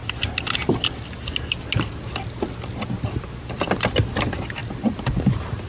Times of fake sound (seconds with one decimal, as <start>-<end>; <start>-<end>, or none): none